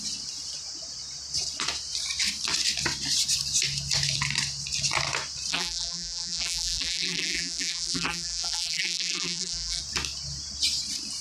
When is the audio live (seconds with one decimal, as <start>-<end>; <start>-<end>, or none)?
0.0-5.5; 9.8-11.2